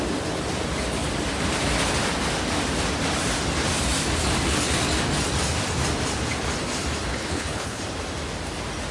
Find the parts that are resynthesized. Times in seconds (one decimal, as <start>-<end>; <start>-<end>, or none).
7.1-7.8